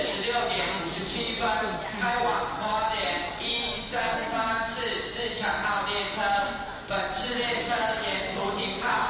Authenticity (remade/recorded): recorded